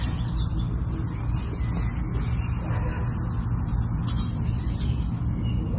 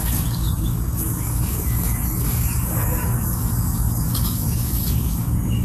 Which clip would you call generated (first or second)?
second